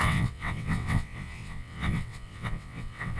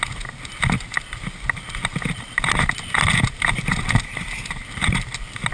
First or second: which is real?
second